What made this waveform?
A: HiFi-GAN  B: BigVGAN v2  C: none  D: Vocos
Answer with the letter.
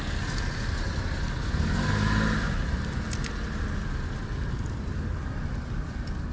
C